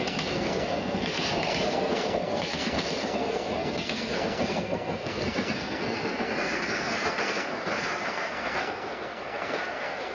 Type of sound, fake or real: fake